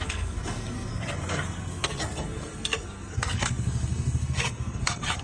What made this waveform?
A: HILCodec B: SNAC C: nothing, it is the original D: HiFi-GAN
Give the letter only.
B